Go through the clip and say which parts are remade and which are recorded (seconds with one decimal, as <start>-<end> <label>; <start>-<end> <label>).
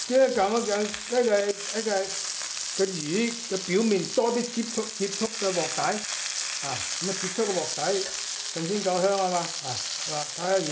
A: 0.0-10.7 recorded